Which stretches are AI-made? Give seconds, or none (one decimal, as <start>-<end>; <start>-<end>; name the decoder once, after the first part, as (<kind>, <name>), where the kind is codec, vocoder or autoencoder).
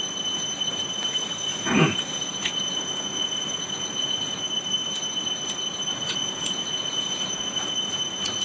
1.5-4.4 (vocoder, Vocos); 5.9-7.7